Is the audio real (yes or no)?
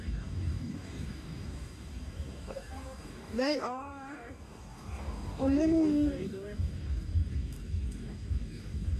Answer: no